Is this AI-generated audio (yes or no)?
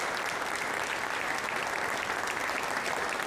no